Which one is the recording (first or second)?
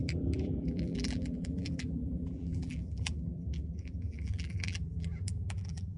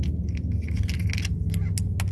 second